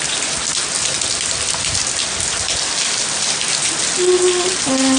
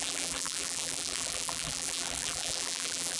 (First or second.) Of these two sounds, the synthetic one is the second